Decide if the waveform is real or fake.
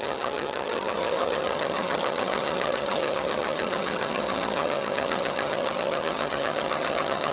fake